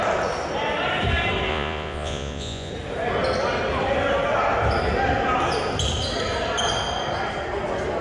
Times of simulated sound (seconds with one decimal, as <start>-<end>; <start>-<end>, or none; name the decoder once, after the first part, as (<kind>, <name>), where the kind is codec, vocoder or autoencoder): 1.5-2.7 (vocoder, Vocos)